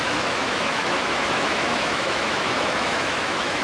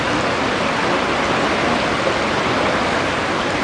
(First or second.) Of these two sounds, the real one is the second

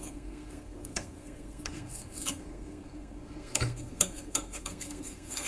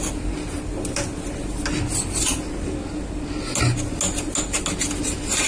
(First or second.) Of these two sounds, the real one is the second